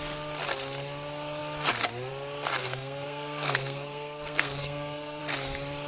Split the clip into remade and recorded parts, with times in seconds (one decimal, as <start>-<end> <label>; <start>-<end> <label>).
0.0-2.6 recorded; 2.6-5.2 remade; 5.2-5.9 recorded